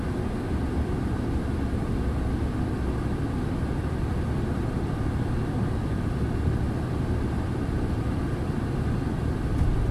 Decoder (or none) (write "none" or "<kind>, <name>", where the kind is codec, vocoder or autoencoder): vocoder, BigVGAN v2